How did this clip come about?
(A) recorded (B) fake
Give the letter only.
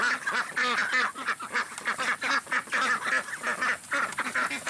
A